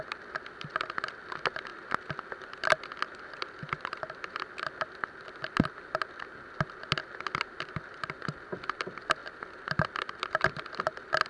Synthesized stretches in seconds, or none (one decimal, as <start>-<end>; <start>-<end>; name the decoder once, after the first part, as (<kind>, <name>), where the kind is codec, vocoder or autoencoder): none